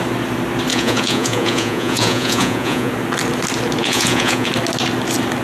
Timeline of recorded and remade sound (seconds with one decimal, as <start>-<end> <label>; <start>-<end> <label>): 0.0-0.7 recorded; 0.7-2.9 remade; 2.9-3.8 recorded; 3.8-4.5 remade; 4.5-5.4 recorded